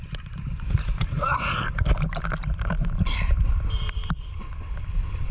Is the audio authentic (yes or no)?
yes